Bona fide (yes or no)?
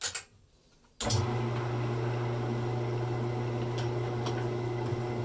yes